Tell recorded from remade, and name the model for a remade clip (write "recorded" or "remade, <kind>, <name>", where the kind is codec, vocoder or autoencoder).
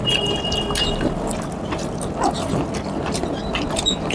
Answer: recorded